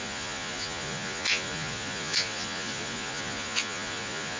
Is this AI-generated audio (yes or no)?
yes